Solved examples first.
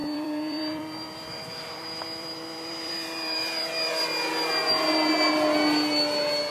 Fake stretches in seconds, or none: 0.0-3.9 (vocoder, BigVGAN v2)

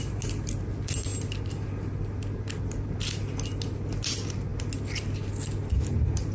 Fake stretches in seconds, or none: none

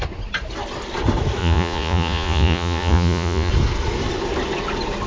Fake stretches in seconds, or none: 1.4-3.5 (vocoder, Vocos)

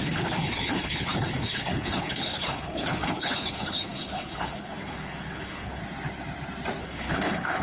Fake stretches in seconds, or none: 0.0-5.8 (codec, HILCodec); 6.8-7.6

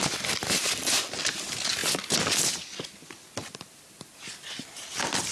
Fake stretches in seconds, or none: none

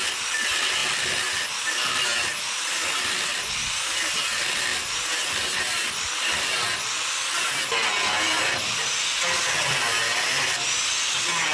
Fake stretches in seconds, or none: none